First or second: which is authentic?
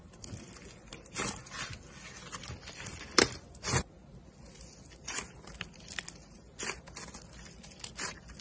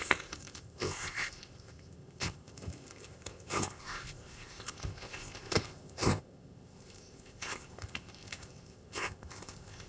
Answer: first